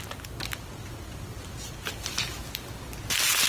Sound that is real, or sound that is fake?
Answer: real